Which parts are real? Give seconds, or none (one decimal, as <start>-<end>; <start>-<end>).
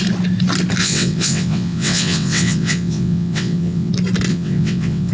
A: 0.0-0.8; 3.9-4.3